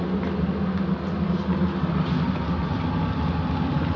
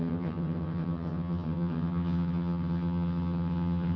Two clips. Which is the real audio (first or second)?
first